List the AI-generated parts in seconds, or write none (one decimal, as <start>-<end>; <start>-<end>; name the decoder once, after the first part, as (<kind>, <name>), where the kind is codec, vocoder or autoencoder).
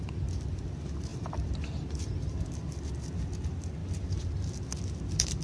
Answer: none